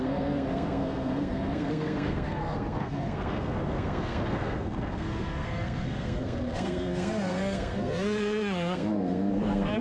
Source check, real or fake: fake